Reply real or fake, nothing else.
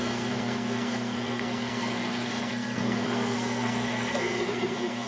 fake